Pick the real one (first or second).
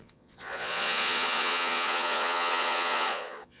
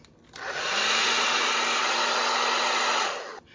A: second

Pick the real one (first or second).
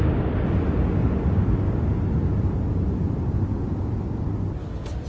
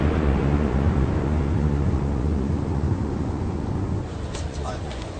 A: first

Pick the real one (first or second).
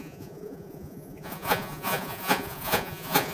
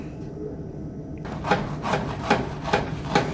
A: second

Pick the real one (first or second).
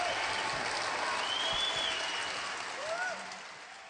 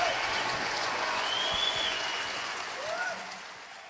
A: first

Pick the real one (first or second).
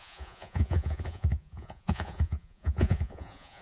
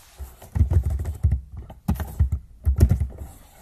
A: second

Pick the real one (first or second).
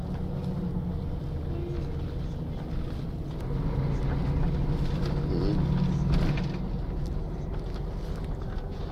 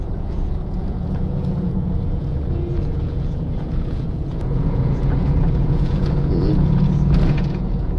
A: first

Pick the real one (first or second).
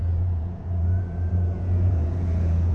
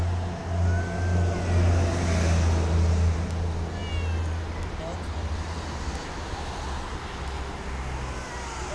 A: second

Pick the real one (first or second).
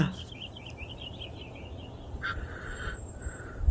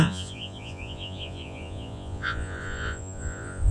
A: first